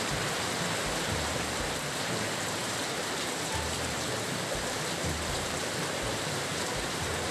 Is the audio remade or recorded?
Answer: remade